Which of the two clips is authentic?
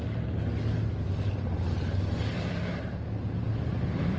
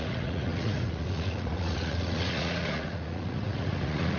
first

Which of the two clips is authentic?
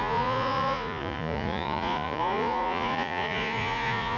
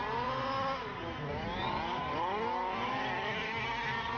second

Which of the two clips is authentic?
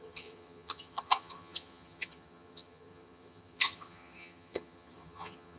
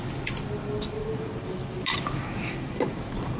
second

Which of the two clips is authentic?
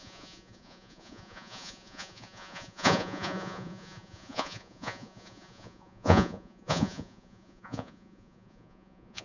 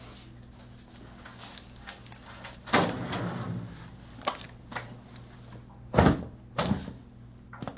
second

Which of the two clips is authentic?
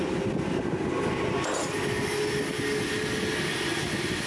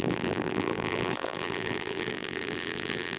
first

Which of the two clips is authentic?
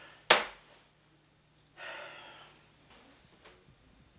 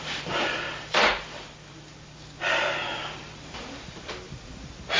first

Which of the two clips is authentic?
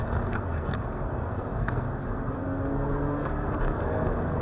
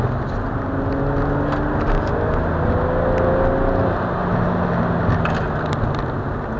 second